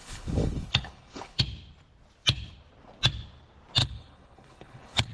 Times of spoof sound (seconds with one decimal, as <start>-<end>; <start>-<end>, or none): 0.0-1.4; 3.8-5.1